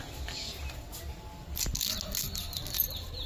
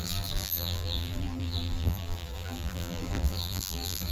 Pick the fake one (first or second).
second